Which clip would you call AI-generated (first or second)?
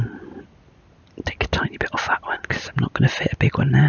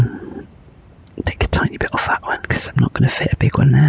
second